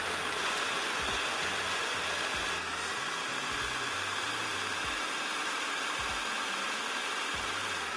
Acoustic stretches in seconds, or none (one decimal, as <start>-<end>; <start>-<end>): 0.0-0.4; 2.0-3.3; 4.0-8.0